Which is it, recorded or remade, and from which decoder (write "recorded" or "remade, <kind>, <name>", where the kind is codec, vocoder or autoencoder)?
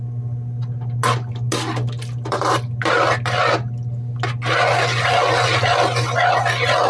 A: recorded